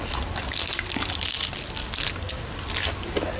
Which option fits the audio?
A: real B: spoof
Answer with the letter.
A